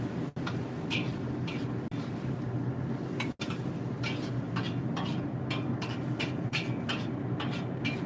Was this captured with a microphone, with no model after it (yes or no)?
yes